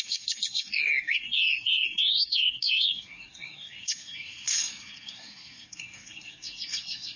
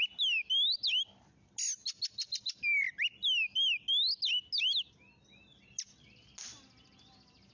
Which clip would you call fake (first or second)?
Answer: first